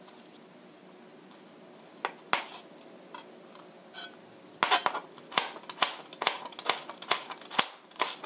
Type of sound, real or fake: real